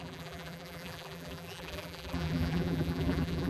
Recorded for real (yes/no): no